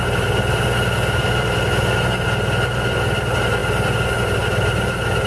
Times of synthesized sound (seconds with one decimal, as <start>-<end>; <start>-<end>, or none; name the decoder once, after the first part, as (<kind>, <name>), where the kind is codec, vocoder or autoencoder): none